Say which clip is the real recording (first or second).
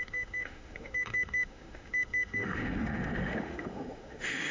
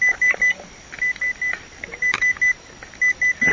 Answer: second